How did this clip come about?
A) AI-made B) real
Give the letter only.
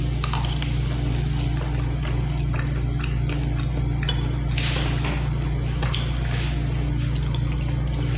B